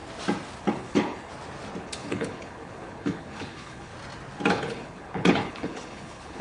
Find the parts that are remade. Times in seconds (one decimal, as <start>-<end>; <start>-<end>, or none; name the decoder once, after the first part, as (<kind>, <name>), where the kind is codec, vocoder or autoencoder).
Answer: 0.7-1.3 (codec, HILCodec); 1.8-3.9; 4.5-6.4